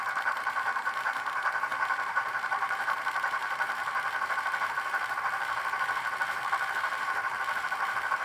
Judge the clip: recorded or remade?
remade